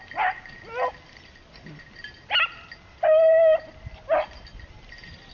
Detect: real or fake real